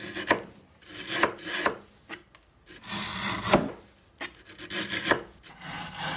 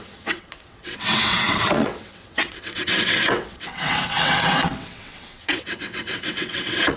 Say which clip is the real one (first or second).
first